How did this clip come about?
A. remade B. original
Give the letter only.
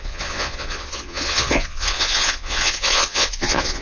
A